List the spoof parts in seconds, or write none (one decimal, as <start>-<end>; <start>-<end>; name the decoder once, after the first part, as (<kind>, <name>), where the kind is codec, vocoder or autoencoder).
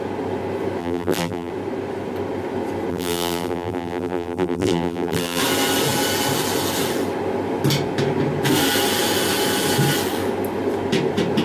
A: 0.8-1.5 (vocoder, BigVGAN v2); 2.9-5.4